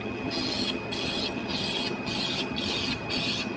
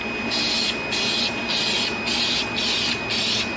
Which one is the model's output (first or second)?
first